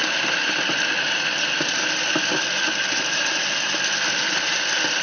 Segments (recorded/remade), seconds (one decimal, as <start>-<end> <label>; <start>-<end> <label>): 0.0-5.0 recorded